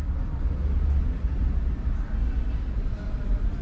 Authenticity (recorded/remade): recorded